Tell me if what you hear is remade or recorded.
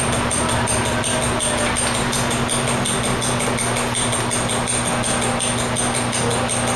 recorded